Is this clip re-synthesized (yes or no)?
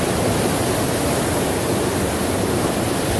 no